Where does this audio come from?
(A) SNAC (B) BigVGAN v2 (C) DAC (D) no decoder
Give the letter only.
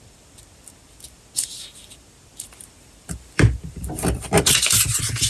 B